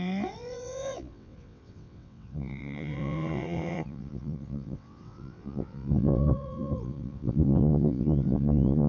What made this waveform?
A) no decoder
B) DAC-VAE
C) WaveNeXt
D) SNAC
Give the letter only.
C